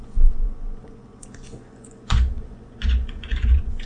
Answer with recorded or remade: remade